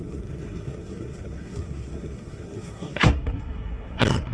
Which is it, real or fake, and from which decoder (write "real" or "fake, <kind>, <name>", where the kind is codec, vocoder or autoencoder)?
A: fake, codec, SNAC